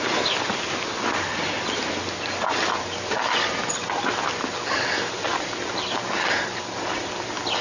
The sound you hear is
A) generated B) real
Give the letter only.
B